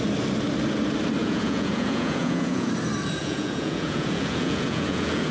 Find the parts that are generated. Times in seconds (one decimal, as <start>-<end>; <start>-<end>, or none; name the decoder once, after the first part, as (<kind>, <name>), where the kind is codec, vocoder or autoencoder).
1.2-2.7 (vocoder, Vocos); 3.2-5.3